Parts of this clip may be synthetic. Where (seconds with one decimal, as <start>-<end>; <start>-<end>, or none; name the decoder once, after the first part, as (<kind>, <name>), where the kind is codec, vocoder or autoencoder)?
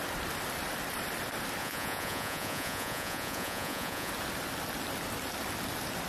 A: 1.6-4.1 (vocoder, Vocos)